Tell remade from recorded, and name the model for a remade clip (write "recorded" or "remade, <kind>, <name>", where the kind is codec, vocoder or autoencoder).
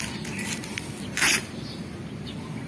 recorded